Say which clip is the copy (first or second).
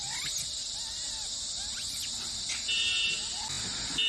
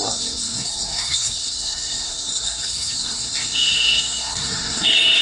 second